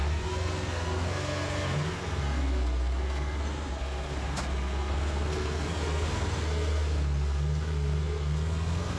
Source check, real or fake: fake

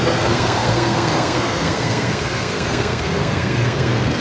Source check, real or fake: fake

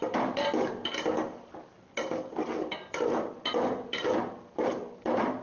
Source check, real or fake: real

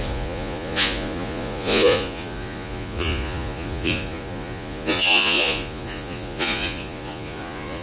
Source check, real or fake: fake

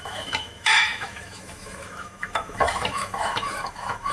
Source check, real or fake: fake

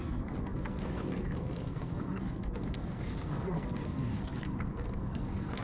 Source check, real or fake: fake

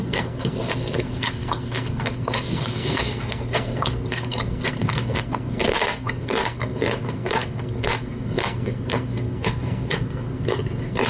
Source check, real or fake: fake